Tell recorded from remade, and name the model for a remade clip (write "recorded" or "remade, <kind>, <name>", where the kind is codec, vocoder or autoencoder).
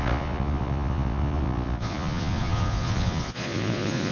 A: remade, vocoder, Vocos